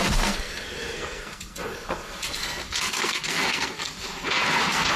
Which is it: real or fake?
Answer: fake